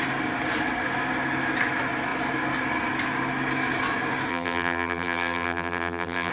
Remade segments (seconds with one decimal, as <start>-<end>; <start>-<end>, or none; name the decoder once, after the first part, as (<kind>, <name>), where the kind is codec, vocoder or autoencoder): 4.3-6.3 (vocoder, BigVGAN v2)